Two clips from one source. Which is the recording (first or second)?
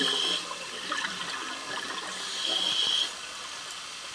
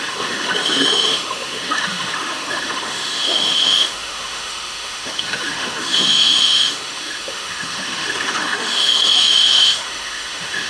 first